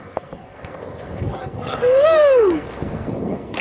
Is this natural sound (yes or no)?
no